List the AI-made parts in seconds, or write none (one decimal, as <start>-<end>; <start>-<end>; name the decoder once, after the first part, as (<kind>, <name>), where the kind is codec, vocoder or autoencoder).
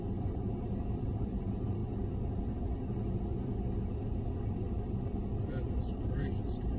0.0-1.8 (vocoder, BigVGAN v2); 5.7-6.8